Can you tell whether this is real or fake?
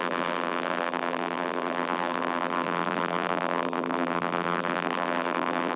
fake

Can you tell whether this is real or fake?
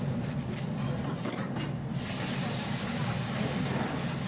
real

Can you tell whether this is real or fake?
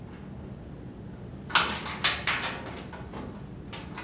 real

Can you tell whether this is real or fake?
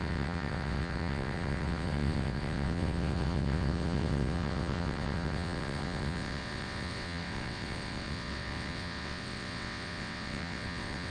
fake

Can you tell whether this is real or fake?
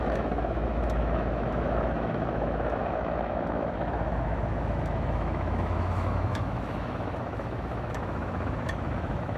fake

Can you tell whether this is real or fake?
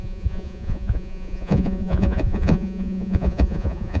fake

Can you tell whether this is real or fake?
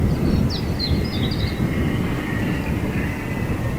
real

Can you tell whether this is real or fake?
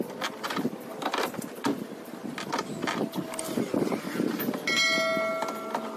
real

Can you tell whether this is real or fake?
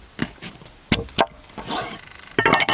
real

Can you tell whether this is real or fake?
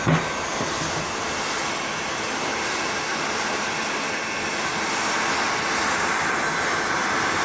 real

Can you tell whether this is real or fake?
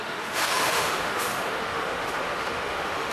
fake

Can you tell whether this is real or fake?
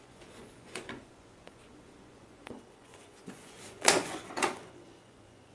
fake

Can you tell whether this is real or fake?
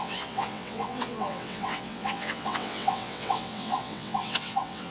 fake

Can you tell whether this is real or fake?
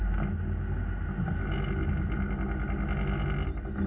real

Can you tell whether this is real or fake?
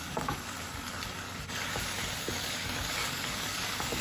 fake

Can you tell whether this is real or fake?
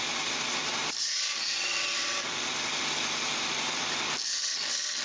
real